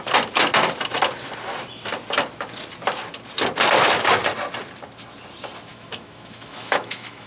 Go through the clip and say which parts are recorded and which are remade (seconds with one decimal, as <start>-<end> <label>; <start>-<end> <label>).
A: 0.0-5.7 recorded; 5.7-7.3 remade